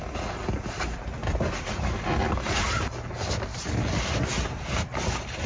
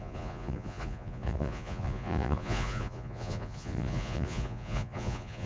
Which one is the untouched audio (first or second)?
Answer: first